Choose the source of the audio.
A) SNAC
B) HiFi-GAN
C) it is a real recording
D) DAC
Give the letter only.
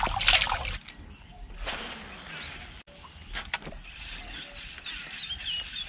C